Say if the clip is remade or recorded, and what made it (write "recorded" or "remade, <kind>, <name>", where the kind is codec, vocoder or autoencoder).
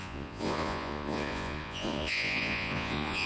remade, vocoder, Vocos